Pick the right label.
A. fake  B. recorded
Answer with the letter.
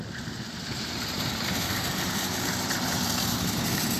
A